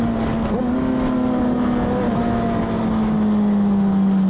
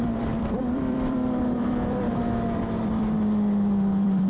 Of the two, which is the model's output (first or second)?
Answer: second